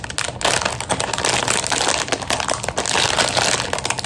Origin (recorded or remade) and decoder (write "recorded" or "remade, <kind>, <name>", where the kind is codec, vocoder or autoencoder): recorded